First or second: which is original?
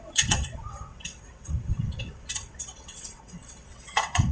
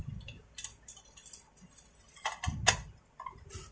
second